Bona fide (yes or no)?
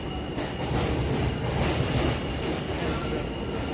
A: yes